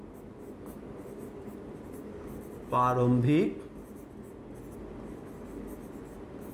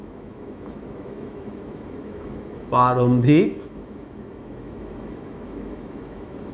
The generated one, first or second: second